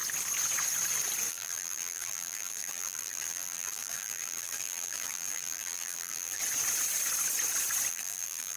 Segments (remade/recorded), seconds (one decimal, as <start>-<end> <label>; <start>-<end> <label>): 0.0-1.3 recorded; 1.3-6.4 remade; 6.4-7.9 recorded; 7.9-8.6 remade

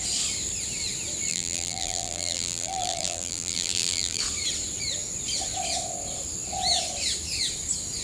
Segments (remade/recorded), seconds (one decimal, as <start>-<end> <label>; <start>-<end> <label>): 0.0-1.3 recorded; 1.3-4.2 remade; 4.2-8.0 recorded

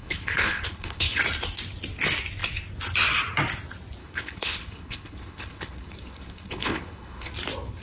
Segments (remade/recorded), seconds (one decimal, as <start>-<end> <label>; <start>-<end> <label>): 0.0-1.2 remade; 1.2-4.0 recorded; 4.0-7.3 remade; 7.3-7.8 recorded

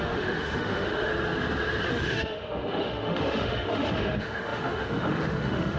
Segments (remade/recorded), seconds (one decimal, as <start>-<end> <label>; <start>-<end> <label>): 0.0-1.1 remade; 1.1-1.9 recorded; 1.9-5.8 remade

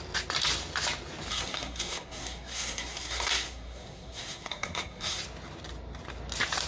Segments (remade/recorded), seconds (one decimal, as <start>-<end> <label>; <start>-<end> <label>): 0.0-1.3 recorded; 1.3-5.2 remade; 5.2-6.7 recorded

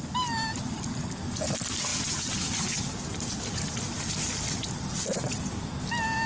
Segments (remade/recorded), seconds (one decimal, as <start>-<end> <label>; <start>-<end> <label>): 0.0-6.3 recorded